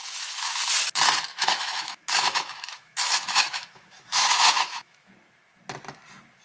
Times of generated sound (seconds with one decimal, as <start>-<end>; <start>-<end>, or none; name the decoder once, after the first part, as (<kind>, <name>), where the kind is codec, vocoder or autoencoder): 0.0-0.6 (autoencoder, DAC-VAE); 1.3-5.1